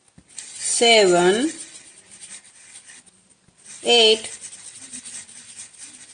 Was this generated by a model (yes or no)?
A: no